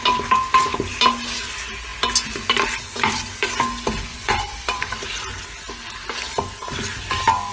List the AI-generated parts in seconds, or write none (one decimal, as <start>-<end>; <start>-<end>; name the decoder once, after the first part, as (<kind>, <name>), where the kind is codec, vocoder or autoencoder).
4.1-4.9 (vocoder, Vocos)